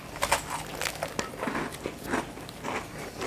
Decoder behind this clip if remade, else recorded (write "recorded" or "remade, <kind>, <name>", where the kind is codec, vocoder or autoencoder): recorded